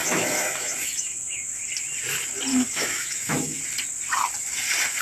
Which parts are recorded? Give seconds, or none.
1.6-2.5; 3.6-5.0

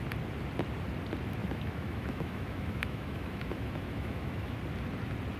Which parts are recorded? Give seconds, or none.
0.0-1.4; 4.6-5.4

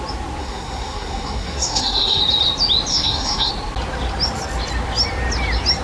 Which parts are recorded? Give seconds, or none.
0.0-0.4; 2.2-2.9; 3.5-5.8